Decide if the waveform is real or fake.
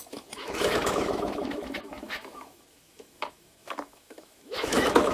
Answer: fake